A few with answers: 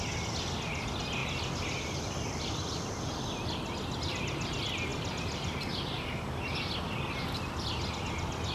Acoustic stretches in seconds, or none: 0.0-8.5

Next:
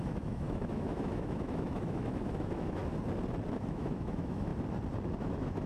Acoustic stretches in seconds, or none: 2.8-3.5; 4.5-5.2

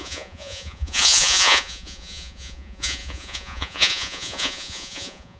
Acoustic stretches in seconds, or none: none

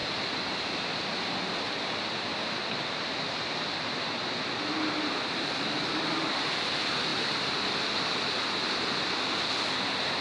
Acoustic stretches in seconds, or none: 0.0-10.2

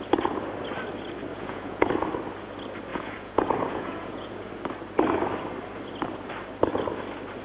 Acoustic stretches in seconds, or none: 0.0-1.3; 1.9-2.9; 4.5-7.4

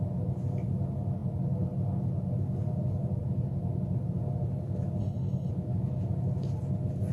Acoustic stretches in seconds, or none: 0.0-5.0; 5.5-7.1

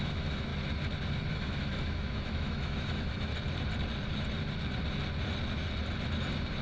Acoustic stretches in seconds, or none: 0.5-1.3; 3.3-6.6